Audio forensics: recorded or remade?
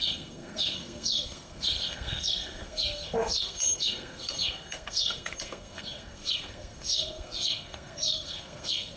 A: remade